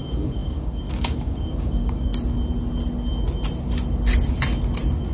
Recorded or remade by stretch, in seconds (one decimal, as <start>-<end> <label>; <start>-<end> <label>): 0.0-2.1 remade; 2.1-5.1 recorded